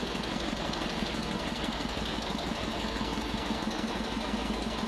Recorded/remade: remade